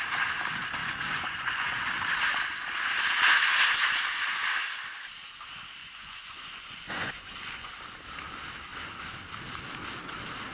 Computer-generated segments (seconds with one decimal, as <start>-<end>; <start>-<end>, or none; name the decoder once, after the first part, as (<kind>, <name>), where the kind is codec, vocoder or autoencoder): 0.8-1.9 (vocoder, Vocos); 5.8-7.7